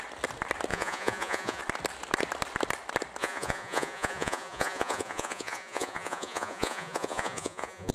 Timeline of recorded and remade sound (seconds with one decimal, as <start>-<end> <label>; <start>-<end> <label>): 0.0-0.7 recorded; 0.7-1.6 remade; 1.6-3.2 recorded; 3.2-7.9 remade